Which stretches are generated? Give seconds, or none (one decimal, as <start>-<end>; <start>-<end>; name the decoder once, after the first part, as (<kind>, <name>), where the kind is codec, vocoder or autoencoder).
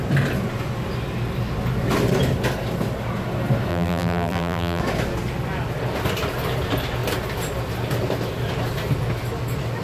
3.7-4.8 (vocoder, BigVGAN v2)